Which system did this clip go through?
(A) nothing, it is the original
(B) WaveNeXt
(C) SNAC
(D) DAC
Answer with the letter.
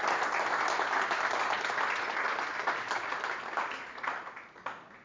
A